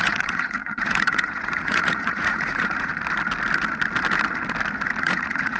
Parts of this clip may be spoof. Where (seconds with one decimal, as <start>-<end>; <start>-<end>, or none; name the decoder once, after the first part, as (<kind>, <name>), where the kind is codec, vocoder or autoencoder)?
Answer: 0.0-2.9 (vocoder, Vocos); 5.0-5.6